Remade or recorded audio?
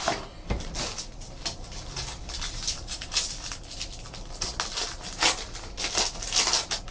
recorded